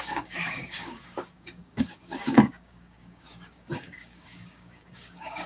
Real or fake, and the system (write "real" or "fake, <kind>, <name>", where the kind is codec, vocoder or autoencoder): fake, codec, DAC